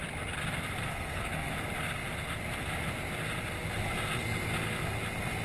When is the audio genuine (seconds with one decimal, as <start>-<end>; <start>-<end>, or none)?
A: 0.0-0.9; 1.5-5.4